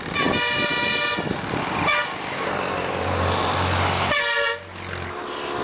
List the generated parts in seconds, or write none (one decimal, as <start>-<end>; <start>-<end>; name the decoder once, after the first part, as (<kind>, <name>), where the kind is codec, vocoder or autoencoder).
none